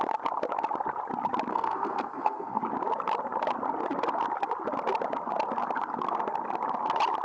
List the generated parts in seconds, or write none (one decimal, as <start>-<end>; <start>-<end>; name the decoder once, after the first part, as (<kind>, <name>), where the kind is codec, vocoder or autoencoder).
1.5-2.6 (codec, SNAC)